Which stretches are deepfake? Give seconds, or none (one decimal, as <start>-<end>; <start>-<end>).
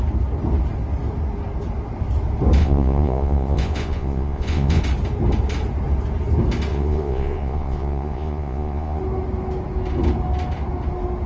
2.6-4.8; 6.7-9.0